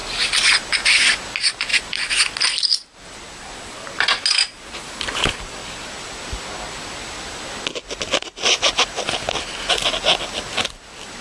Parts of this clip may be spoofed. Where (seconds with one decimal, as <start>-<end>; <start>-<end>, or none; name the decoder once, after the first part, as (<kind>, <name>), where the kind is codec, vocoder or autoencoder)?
none